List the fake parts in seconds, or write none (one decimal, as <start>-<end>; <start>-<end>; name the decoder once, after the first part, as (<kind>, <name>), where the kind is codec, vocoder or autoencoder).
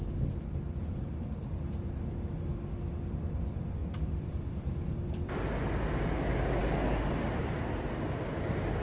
3.8-5.3 (vocoder, BigVGAN v2)